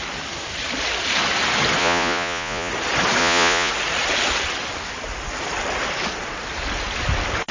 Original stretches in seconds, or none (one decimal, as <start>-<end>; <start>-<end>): 0.0-1.8; 2.7-3.2; 3.7-7.5

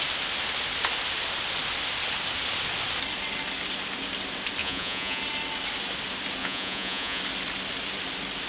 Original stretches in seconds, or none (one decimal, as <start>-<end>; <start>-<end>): 0.0-4.6; 5.2-6.4; 7.2-8.5